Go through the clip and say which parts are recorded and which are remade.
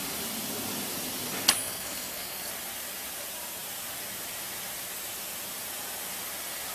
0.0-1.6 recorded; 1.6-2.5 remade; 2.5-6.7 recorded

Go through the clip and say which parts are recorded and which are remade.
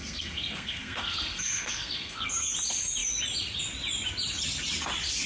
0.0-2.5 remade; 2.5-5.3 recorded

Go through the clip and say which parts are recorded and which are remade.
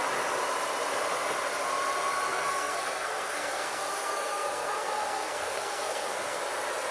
0.0-2.3 recorded; 2.3-6.4 remade; 6.4-6.9 recorded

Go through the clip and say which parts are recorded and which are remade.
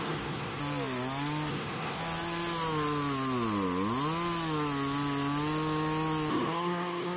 0.0-0.6 remade; 0.6-1.5 recorded; 1.5-2.0 remade; 2.0-6.3 recorded; 6.3-7.2 remade